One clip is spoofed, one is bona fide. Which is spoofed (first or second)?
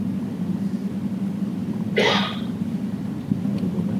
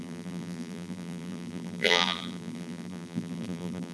second